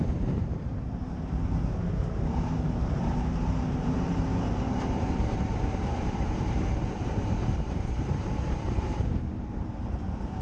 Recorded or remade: remade